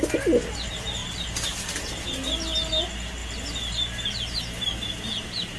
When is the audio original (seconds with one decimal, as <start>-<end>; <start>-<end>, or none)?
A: 0.0-5.6